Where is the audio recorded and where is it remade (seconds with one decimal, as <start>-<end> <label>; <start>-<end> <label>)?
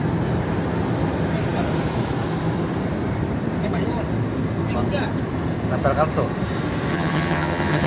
0.0-6.9 recorded; 6.9-7.9 remade